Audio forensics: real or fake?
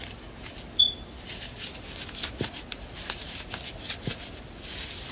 real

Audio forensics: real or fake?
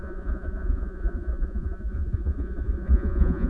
fake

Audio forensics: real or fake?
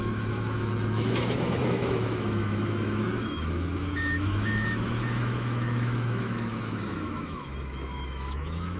fake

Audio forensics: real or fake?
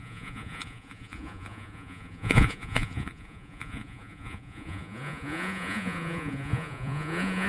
fake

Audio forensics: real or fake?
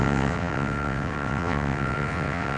fake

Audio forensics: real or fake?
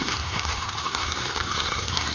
fake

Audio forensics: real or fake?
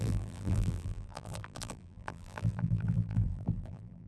fake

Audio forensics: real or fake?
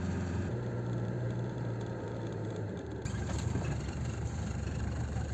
fake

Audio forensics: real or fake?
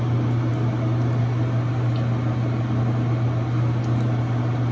real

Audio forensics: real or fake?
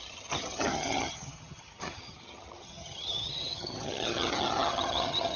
fake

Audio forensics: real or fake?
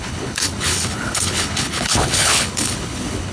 fake